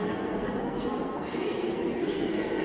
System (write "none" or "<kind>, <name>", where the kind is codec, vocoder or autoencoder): codec, SNAC